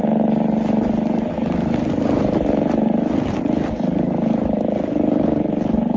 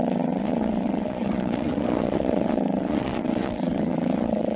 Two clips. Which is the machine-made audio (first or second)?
second